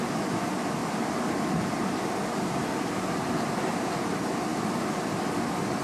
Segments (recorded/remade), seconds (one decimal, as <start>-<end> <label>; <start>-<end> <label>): 0.0-5.8 recorded